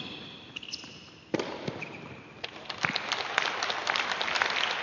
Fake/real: real